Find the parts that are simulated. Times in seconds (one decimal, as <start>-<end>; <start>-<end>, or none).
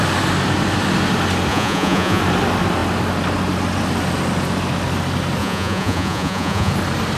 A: 1.5-2.2; 5.4-6.7